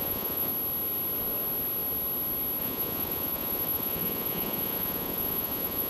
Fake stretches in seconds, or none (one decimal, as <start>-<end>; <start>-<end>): 0.0-0.5; 2.6-5.9

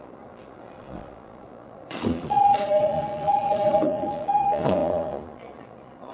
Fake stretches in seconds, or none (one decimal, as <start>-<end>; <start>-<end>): 0.0-6.1

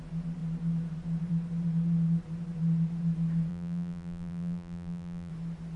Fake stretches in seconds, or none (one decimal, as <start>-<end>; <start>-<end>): 3.5-5.3

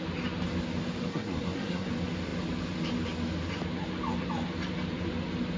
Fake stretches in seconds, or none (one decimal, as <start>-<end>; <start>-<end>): 1.0-1.9

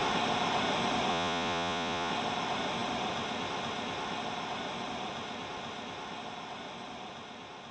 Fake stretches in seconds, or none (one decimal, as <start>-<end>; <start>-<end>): 1.1-2.1